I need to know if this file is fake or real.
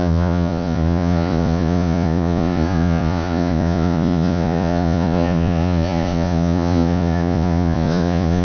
fake